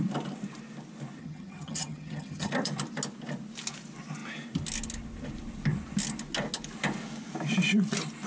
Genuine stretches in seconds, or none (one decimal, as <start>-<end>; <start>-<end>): 0.0-1.2; 2.5-8.3